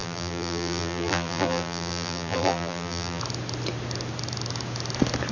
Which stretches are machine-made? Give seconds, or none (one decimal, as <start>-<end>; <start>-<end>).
0.0-3.2